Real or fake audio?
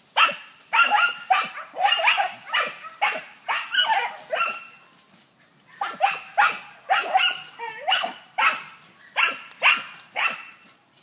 real